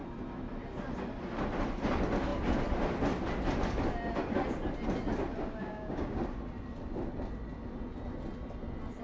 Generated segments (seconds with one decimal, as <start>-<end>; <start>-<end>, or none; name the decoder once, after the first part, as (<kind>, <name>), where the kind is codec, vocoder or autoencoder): 5.6-6.2 (codec, DAC)